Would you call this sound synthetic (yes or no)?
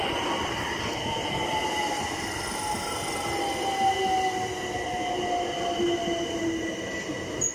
no